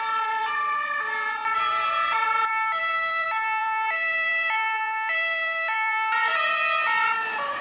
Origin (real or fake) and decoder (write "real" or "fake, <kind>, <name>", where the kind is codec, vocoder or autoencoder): fake, vocoder, BigVGAN v2